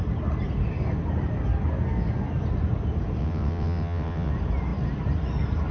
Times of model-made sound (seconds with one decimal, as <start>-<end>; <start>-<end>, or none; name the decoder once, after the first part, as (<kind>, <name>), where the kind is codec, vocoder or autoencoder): 3.2-4.3 (vocoder, WaveNeXt)

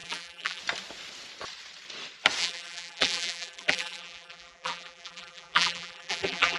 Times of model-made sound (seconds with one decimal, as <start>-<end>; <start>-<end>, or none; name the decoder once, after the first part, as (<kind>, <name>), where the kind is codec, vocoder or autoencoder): 0.0-0.6 (vocoder, BigVGAN v2); 2.4-6.6

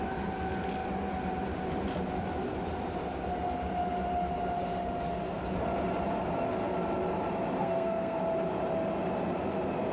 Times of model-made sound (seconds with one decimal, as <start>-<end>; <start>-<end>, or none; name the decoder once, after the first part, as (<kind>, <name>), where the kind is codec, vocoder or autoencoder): 7.6-8.2 (codec, SNAC)